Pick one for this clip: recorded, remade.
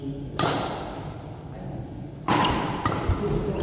recorded